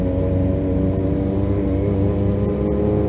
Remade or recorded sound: recorded